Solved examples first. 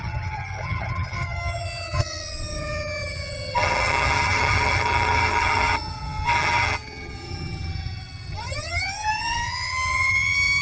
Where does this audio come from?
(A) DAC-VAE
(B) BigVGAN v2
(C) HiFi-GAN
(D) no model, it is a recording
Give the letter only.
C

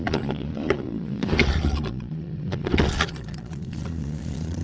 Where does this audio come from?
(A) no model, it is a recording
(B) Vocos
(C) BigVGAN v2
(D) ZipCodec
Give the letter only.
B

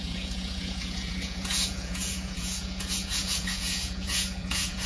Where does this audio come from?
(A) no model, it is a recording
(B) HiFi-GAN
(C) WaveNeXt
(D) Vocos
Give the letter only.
D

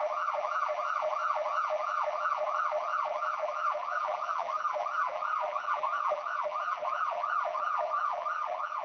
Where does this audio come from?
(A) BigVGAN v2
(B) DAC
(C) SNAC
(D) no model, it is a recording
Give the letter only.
A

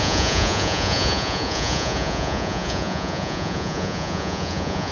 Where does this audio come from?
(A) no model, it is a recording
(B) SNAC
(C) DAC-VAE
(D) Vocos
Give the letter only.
D